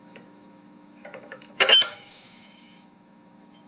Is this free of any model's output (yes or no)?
no